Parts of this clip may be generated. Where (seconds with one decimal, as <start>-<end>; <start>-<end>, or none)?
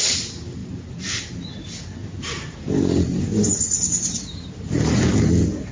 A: 0.6-1.2; 2.0-5.0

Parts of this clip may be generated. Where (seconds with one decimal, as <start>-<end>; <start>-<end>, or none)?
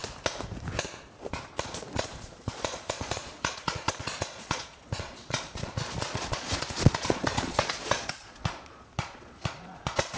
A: 1.3-10.2